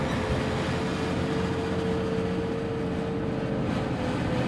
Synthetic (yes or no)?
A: no